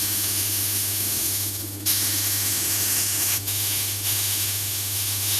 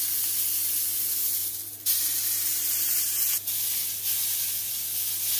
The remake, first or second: first